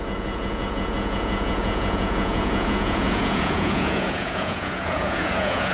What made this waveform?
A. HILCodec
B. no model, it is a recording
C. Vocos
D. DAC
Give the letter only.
C